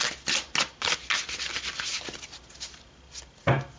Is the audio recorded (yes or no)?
yes